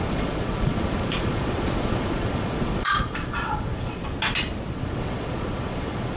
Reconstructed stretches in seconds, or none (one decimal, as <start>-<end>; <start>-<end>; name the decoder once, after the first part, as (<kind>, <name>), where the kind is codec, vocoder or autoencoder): 0.0-4.0 (vocoder, Vocos); 4.7-6.2